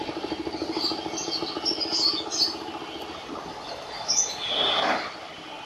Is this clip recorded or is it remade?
recorded